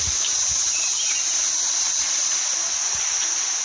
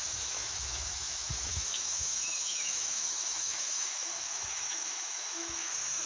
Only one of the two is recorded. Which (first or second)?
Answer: first